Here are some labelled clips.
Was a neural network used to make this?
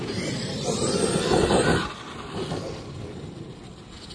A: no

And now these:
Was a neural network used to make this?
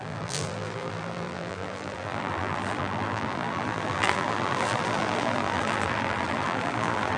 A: yes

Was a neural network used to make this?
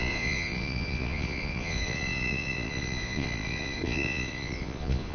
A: yes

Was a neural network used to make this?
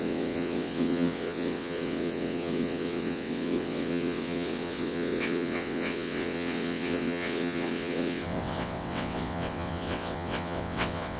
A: yes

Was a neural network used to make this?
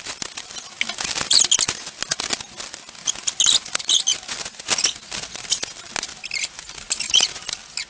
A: no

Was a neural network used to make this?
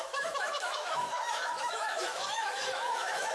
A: yes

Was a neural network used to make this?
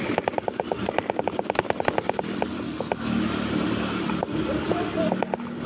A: no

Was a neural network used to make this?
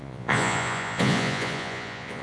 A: yes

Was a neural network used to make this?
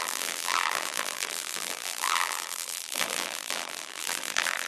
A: yes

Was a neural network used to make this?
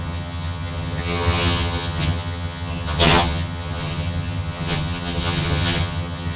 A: yes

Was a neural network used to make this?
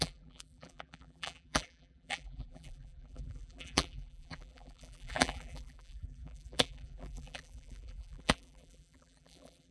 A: yes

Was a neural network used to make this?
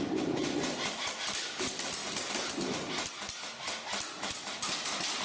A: no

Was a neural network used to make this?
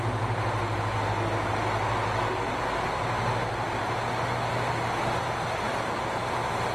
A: no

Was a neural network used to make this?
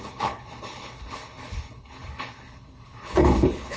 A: yes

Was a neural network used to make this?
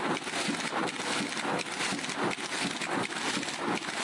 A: no